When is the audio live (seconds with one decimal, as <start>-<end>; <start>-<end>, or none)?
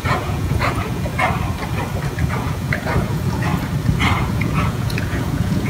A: 1.1-2.3; 3.5-4.2